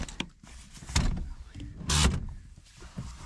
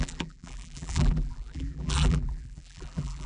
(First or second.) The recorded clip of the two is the first